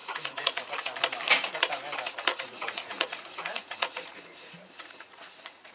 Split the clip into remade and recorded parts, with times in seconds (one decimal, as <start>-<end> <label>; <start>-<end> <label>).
0.0-0.7 remade; 0.7-2.3 recorded; 2.3-5.7 remade